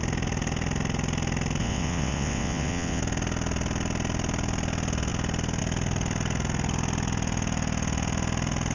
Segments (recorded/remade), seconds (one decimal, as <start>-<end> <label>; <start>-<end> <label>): 0.0-1.6 recorded; 1.6-3.0 remade; 3.0-8.7 recorded